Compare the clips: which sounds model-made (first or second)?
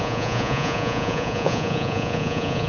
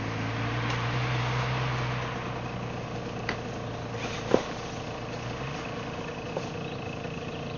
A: first